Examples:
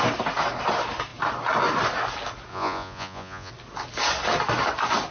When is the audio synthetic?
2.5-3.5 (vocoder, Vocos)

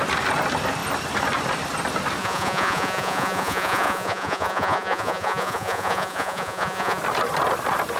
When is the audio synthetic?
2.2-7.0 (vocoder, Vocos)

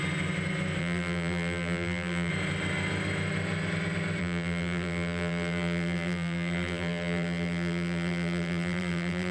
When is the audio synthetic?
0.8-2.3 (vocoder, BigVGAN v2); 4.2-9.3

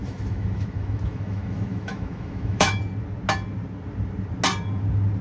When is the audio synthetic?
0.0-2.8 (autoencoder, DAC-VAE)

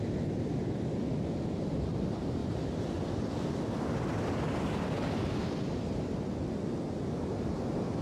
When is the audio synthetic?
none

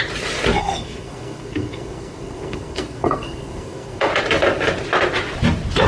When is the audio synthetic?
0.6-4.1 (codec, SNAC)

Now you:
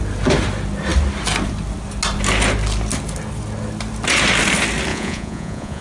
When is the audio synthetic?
4.9-5.8 (vocoder, Vocos)